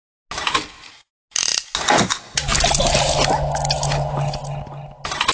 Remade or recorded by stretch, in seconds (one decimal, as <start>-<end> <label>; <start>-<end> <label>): 0.0-5.3 recorded